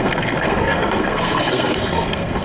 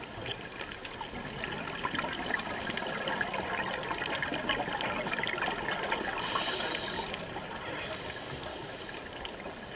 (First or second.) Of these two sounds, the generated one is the first